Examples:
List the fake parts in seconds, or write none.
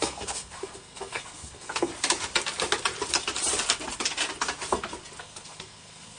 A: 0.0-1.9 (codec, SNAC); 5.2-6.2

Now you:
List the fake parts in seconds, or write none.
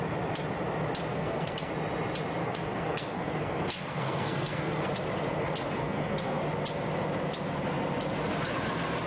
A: 1.1-1.7 (codec, SNAC); 2.4-4.9; 5.8-6.4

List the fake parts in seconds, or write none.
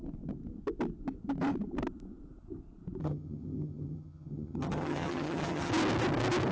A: 3.0-5.7 (vocoder, HiFi-GAN)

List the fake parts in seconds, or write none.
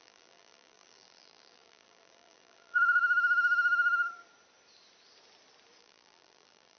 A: 0.0-3.0 (vocoder, BigVGAN v2); 5.8-6.8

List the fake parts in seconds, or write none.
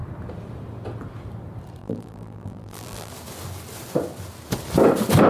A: 1.8-3.1 (vocoder, BigVGAN v2)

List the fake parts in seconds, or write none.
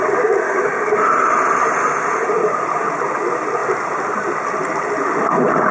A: none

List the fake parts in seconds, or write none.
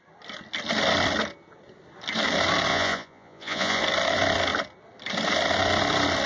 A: 2.7-3.8 (vocoder, Vocos)